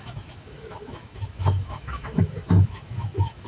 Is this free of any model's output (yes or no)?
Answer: no